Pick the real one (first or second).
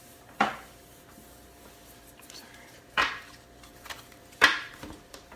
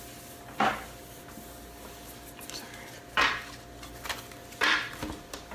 second